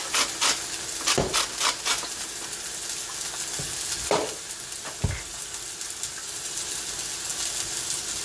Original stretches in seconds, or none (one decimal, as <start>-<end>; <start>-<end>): 0.0-8.2